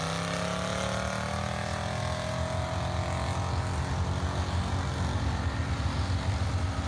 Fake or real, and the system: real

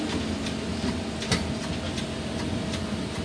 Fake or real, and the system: real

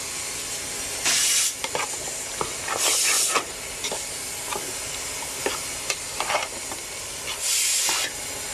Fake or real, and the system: real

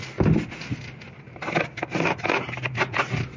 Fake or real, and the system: real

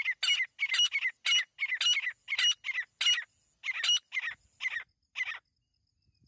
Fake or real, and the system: real